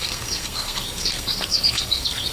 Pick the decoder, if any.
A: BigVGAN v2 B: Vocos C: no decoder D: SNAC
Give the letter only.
D